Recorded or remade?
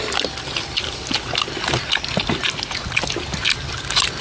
recorded